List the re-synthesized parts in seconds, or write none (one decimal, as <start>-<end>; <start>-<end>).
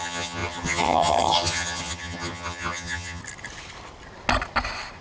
0.0-3.2